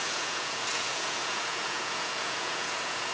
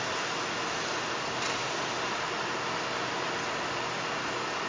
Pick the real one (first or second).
second